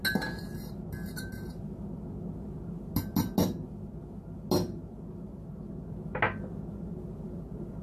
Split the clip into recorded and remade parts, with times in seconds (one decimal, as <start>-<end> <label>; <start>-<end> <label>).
0.0-7.8 recorded